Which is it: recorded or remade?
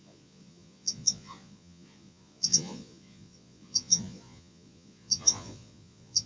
remade